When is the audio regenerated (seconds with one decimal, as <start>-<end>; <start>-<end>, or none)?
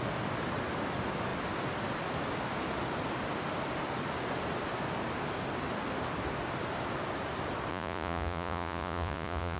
7.7-9.6